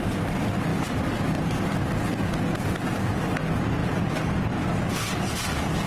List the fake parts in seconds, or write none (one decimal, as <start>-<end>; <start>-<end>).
0.7-1.4; 3.8-4.9